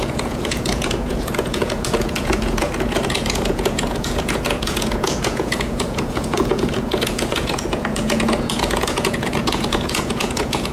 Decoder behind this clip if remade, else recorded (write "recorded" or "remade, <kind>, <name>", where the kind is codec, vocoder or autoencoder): remade, vocoder, Vocos